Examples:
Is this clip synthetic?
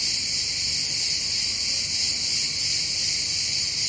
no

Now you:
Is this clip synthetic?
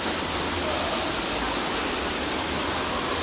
no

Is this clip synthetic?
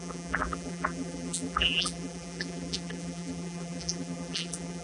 yes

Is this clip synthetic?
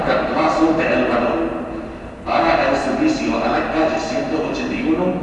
no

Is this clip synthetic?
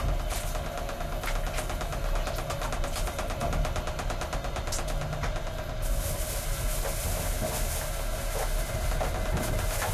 no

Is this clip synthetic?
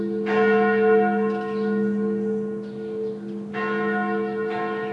no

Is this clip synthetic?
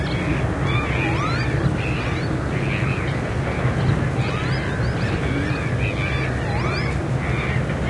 no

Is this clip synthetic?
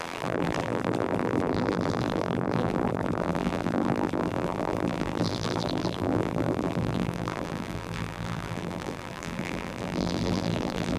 yes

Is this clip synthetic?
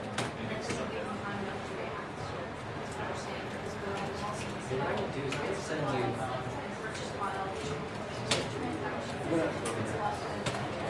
no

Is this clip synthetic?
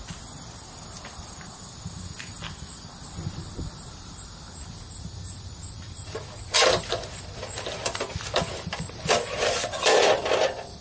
yes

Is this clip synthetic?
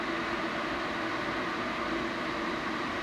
no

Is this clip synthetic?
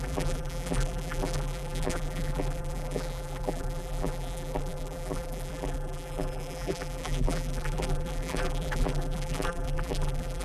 yes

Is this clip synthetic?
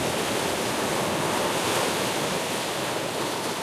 no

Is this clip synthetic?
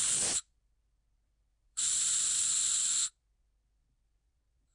yes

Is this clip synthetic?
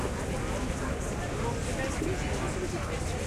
no